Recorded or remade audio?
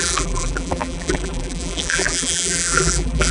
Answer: remade